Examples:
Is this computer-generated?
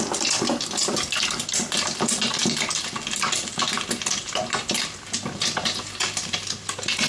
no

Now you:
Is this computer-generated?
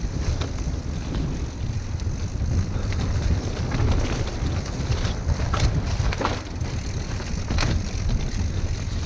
no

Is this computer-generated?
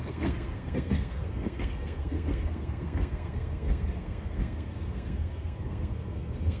yes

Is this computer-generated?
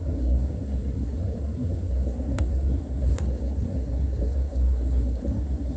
yes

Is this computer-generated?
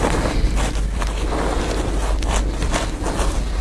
no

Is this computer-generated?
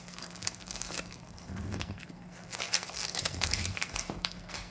yes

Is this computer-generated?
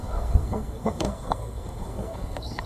yes